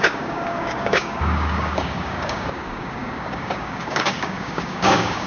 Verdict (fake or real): fake